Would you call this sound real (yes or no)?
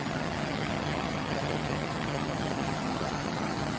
no